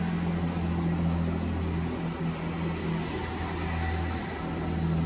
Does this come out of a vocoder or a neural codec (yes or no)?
no